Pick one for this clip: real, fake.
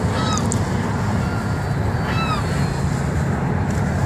real